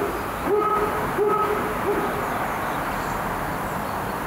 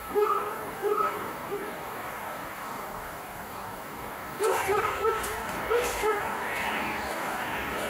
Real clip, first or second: first